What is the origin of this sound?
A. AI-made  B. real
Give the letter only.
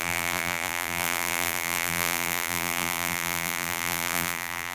A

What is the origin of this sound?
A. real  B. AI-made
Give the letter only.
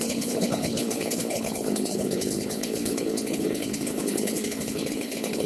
B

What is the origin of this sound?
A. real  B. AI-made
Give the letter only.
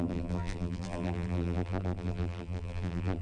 B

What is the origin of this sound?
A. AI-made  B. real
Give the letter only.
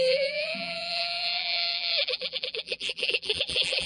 A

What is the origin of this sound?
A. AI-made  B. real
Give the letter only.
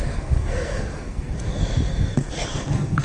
A